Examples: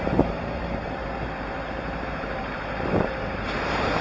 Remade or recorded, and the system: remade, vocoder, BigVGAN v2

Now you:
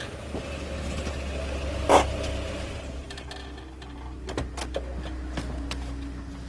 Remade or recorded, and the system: recorded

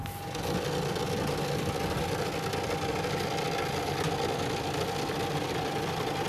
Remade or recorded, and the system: recorded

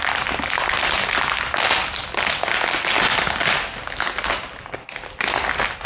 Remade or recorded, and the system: recorded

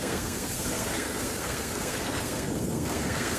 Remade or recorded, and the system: remade, codec, SNAC